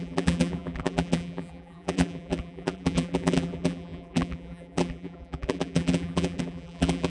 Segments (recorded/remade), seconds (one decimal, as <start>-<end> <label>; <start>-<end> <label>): 0.0-7.1 remade